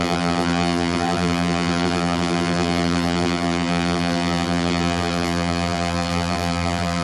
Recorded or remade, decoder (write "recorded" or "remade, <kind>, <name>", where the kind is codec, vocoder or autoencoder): remade, vocoder, BigVGAN v2